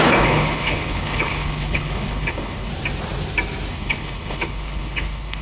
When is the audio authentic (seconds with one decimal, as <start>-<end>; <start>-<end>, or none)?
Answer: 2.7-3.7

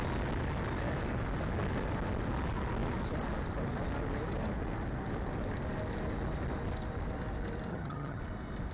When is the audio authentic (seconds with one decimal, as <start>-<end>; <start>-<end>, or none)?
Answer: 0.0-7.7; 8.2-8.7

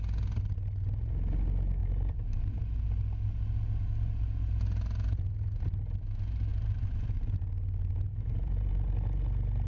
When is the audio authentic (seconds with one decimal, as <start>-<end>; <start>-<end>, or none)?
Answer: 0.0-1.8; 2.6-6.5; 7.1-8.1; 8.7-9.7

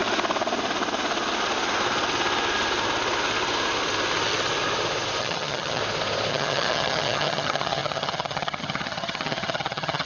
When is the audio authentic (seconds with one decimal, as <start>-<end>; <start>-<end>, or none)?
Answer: 0.0-5.2; 5.8-6.3